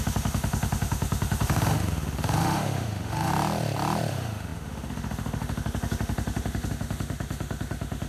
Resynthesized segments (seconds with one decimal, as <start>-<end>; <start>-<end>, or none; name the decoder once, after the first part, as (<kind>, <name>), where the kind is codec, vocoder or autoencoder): 0.0-3.3 (autoencoder, DAC-VAE); 4.1-8.1